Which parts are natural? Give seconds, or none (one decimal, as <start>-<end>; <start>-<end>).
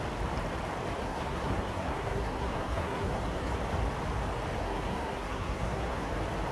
0.0-1.0; 3.5-4.6; 6.1-6.5